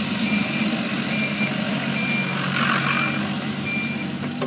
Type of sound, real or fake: real